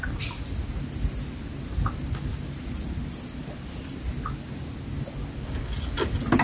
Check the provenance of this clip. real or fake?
real